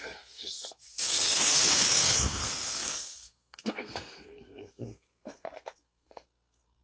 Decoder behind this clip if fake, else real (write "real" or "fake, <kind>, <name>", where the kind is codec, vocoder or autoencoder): fake, codec, SNAC